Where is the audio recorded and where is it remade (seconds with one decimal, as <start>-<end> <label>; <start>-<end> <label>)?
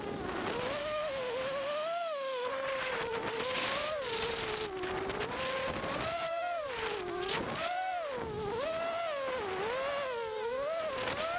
0.0-0.8 recorded; 0.8-2.5 remade; 2.5-11.4 recorded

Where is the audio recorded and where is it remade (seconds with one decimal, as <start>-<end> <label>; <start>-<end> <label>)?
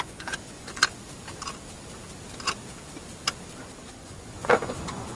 0.0-0.8 remade; 0.8-3.9 recorded; 3.9-5.1 remade